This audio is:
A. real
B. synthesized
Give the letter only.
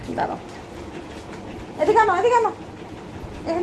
A